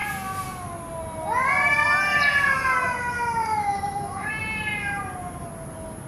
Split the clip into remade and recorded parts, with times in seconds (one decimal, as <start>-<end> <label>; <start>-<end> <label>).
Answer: 0.0-3.5 recorded; 3.5-4.3 remade; 4.3-6.1 recorded